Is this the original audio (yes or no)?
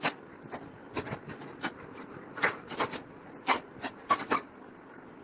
yes